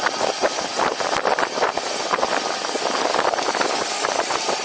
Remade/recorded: recorded